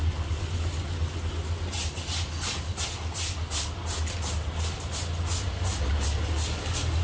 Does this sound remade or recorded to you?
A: recorded